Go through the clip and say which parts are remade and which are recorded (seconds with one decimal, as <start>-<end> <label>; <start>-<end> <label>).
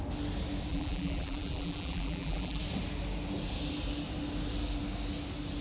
0.0-0.7 recorded; 0.7-2.6 remade; 2.6-5.6 recorded